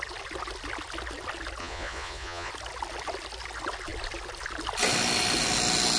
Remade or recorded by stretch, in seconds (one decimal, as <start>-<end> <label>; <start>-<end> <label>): 0.0-1.6 recorded; 1.6-2.5 remade; 2.5-6.0 recorded